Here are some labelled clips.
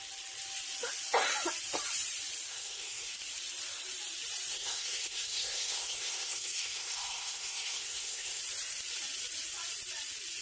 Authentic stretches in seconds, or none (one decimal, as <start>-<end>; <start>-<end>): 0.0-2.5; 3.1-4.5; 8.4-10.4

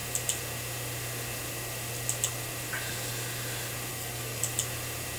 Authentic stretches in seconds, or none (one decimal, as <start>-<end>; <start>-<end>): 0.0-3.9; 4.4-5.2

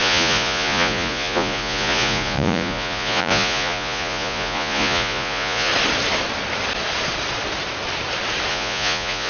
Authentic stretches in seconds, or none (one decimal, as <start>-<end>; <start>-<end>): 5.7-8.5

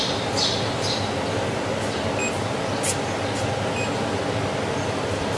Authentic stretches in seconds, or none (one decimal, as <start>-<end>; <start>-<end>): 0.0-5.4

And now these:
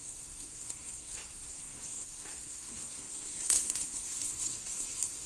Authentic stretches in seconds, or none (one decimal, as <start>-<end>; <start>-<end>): none

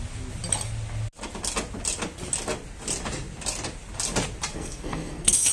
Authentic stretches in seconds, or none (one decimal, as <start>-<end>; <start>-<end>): 0.0-4.5

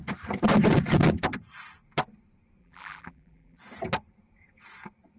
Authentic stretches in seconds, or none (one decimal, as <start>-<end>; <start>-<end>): 0.0-2.6; 3.6-5.2